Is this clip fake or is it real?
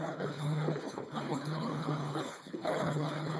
fake